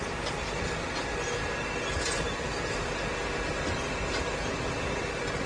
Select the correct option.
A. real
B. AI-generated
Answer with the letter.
A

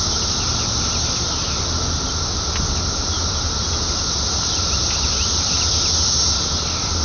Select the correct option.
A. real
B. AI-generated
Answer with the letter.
A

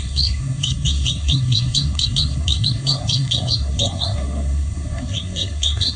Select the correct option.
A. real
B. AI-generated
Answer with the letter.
B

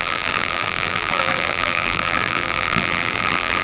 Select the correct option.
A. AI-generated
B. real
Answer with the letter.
A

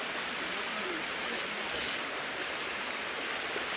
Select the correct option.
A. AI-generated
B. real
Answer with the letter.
B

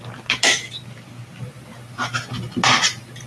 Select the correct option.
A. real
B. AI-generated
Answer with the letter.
A